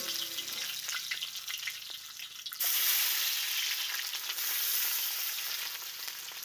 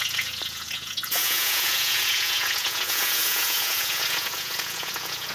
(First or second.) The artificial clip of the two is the second